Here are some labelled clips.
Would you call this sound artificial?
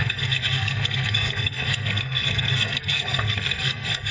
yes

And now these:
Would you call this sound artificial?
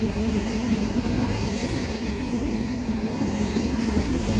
yes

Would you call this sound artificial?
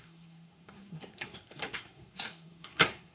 yes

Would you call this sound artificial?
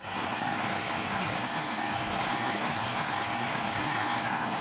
yes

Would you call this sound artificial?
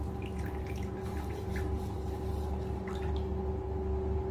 no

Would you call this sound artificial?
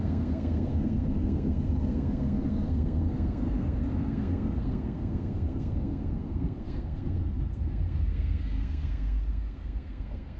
yes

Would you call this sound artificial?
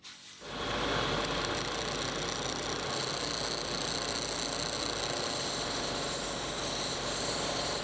no